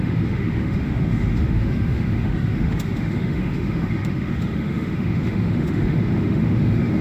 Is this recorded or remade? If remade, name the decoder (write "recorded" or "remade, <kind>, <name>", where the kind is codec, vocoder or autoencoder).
remade, autoencoder, DAC-VAE